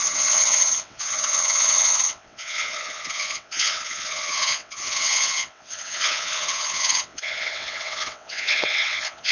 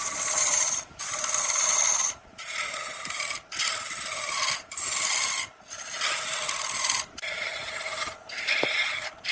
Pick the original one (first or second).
second